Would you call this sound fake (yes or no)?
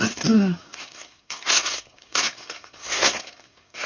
yes